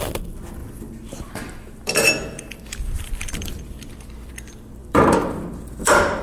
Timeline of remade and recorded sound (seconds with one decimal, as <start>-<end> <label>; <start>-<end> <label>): 0.0-0.6 recorded; 0.6-4.3 remade; 4.3-4.8 recorded; 4.8-6.2 remade